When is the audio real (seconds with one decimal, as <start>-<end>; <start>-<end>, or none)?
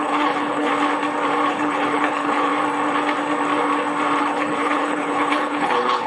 0.7-1.5; 2.5-4.2